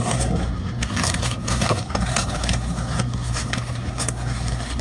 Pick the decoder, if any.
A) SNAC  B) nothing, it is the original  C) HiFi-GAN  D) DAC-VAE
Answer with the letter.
A